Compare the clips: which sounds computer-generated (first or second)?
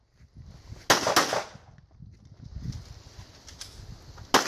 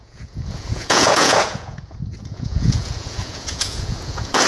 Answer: second